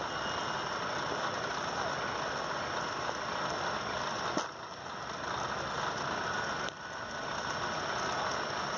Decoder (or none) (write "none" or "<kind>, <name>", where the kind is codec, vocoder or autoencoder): none